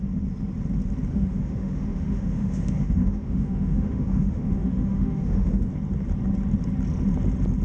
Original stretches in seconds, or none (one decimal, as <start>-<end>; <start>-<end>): 0.0-1.1; 5.7-7.6